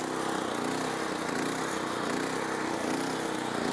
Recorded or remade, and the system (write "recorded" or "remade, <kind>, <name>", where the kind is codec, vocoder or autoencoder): recorded